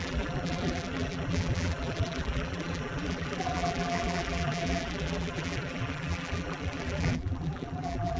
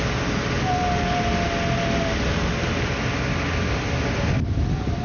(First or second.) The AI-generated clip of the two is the first